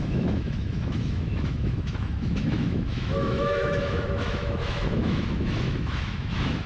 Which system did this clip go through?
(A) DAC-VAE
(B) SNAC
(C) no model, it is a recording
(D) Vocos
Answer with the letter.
A